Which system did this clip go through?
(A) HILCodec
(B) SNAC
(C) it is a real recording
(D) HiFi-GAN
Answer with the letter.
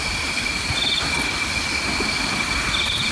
C